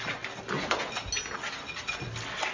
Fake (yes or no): no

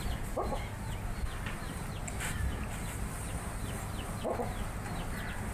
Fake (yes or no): no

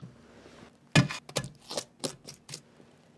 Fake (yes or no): no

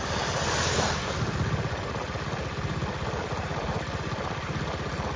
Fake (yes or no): no